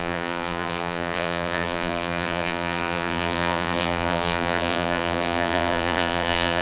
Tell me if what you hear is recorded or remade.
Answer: remade